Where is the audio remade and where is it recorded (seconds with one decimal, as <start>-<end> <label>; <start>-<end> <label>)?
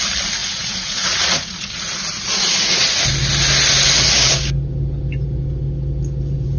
0.0-0.4 recorded; 0.4-3.1 remade; 3.1-6.6 recorded